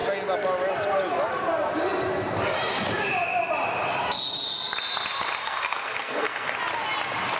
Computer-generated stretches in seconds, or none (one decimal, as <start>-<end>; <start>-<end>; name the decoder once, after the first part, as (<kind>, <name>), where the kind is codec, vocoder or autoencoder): 5.4-6.5 (codec, SNAC)